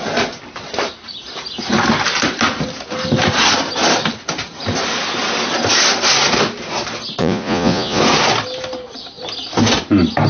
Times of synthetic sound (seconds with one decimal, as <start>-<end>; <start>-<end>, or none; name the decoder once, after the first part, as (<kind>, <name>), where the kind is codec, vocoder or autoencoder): 7.2-8.0 (vocoder, Vocos)